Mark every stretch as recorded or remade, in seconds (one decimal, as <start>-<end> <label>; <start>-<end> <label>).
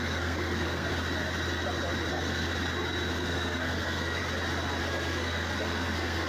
0.0-0.9 remade; 0.9-2.1 recorded; 2.1-2.5 remade; 2.5-3.1 recorded; 3.1-4.2 remade; 4.2-4.8 recorded; 4.8-6.3 remade